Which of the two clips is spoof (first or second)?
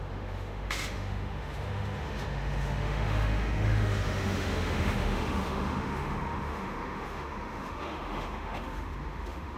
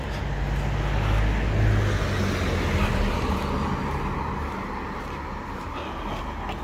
first